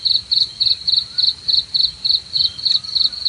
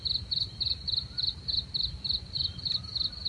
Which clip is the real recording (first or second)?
first